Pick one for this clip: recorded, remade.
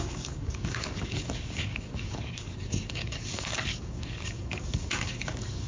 remade